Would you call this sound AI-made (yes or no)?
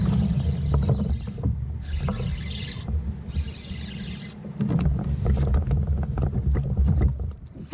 no